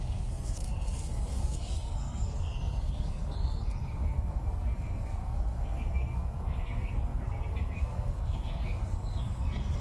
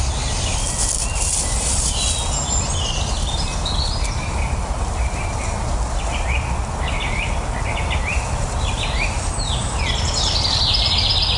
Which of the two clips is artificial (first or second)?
first